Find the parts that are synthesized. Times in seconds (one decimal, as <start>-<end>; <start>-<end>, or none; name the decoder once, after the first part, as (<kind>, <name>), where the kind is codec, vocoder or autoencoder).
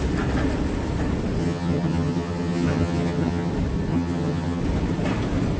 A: 1.4-3.5 (vocoder, HiFi-GAN); 3.9-4.6